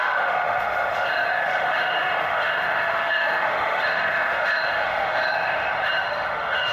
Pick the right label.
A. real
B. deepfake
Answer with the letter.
B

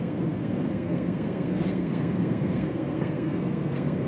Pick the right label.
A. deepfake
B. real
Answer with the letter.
A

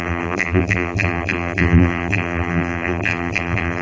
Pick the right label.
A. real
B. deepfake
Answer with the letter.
B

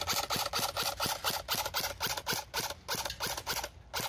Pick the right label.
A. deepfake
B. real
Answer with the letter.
B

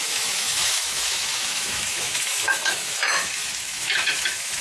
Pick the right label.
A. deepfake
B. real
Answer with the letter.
A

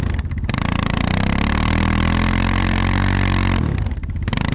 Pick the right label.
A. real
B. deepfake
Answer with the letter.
A